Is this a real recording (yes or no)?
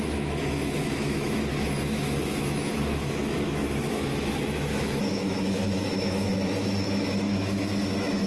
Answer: no